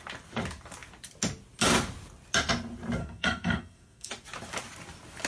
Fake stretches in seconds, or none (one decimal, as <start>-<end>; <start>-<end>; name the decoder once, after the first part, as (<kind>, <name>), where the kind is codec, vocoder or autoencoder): 3.0-4.1 (codec, SNAC)